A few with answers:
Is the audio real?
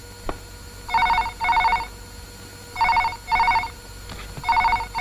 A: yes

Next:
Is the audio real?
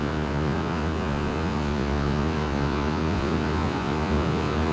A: no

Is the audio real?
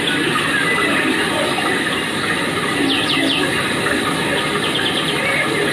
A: yes